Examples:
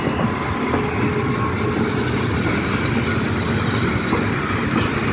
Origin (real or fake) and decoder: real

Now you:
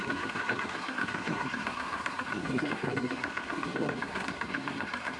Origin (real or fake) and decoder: fake, codec, SNAC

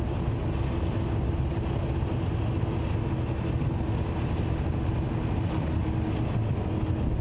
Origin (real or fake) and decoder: real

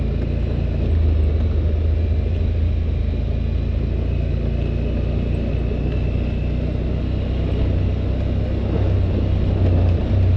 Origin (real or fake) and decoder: real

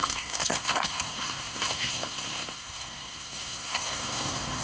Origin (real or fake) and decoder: fake, codec, SNAC